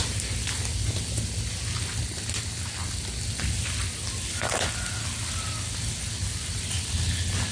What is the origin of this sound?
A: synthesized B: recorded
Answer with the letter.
B